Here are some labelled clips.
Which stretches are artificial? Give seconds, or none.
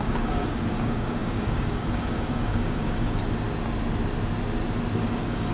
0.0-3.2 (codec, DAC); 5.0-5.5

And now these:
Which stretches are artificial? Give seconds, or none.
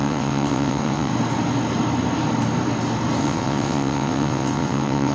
0.0-1.1 (vocoder, WaveNeXt); 3.2-5.1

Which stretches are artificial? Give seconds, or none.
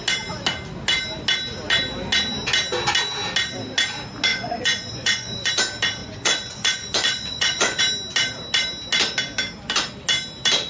4.3-5.5 (vocoder, Vocos); 6.0-7.8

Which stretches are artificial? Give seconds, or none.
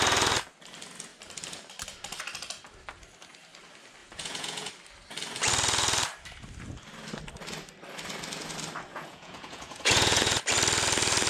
4.0-4.7 (vocoder, Vocos); 8.9-10.4